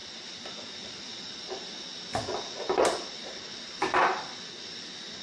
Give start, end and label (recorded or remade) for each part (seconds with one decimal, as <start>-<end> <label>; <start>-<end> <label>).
0.0-5.2 recorded